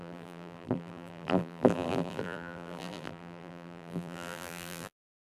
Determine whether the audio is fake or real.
fake